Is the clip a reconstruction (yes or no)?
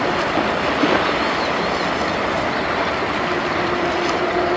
no